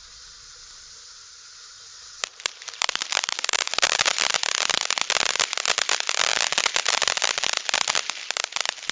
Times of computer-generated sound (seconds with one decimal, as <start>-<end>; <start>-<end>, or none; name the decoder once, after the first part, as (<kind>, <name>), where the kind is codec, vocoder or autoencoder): 1.6-4.0 (vocoder, BigVGAN v2)